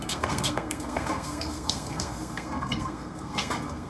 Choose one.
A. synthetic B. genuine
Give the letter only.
A